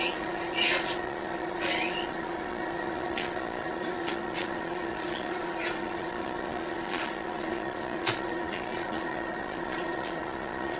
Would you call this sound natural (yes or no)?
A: no